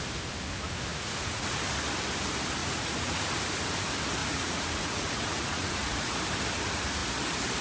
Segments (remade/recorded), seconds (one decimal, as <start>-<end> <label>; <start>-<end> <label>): 0.0-0.9 recorded; 0.9-1.6 remade; 1.6-2.6 recorded; 2.6-3.3 remade; 3.3-4.2 recorded; 4.2-6.2 remade; 6.2-7.6 recorded